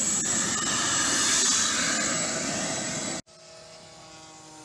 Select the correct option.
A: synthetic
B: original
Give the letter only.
B